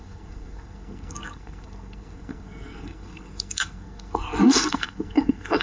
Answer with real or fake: fake